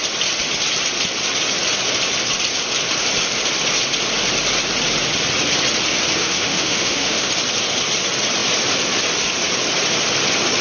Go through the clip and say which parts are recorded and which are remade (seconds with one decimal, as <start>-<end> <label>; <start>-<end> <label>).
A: 0.0-6.2 recorded; 6.2-7.3 remade; 7.3-10.6 recorded